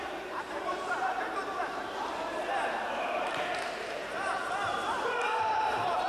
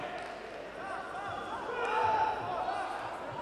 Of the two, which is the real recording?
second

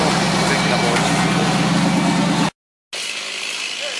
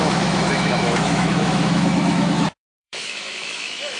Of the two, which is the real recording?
first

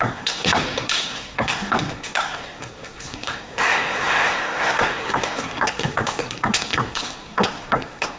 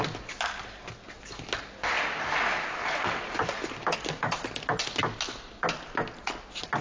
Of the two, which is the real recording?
second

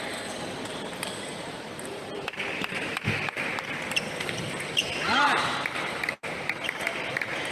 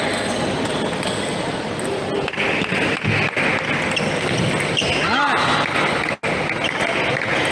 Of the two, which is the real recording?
second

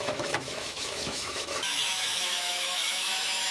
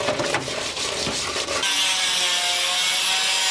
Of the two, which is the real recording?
second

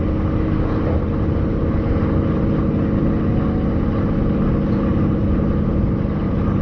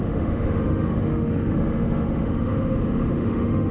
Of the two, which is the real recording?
first